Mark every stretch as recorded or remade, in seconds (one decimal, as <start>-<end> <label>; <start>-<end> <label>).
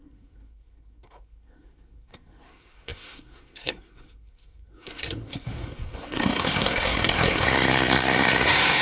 0.0-8.8 remade